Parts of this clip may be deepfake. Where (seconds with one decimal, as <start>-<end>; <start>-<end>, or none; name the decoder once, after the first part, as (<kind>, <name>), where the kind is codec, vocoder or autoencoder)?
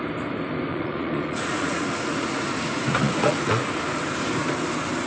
0.7-3.8 (vocoder, Vocos)